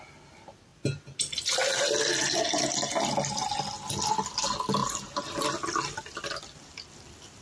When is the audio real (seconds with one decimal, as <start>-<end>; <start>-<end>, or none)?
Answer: 0.0-4.8; 5.4-7.4